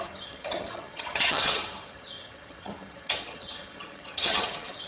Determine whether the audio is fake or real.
fake